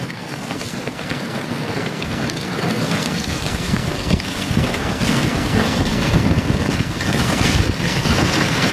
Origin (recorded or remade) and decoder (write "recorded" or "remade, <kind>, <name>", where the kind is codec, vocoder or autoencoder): remade, codec, SNAC